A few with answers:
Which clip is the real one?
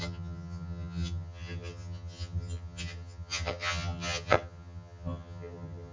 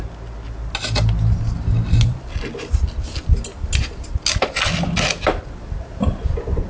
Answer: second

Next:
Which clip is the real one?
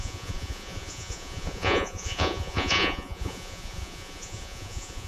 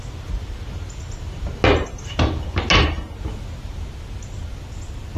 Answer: second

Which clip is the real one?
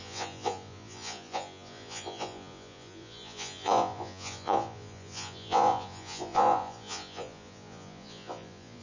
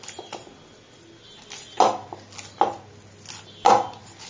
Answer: second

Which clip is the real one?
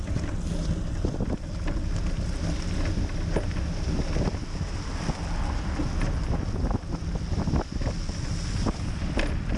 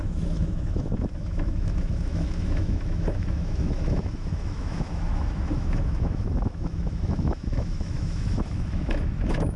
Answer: first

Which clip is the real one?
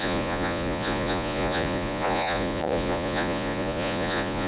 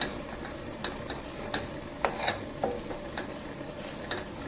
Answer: second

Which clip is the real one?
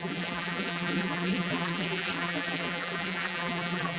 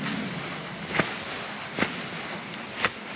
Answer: second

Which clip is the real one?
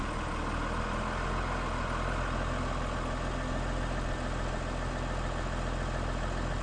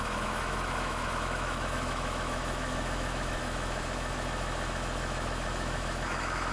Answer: first